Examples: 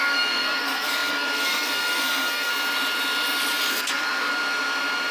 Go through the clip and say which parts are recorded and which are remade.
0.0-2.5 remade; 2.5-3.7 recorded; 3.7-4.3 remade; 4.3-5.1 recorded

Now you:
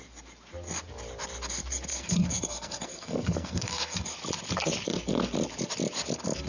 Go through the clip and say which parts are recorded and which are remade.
0.0-1.9 recorded; 1.9-4.0 remade; 4.0-6.5 recorded

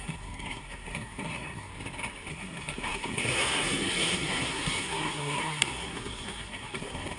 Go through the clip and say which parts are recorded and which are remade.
0.0-1.7 remade; 1.7-2.3 recorded; 2.3-7.2 remade